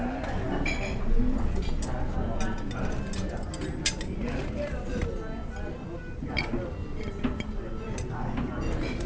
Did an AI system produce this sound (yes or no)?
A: no